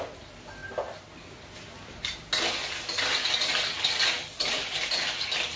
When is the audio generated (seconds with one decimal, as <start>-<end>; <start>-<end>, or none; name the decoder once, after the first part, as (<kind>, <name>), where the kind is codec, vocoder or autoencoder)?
none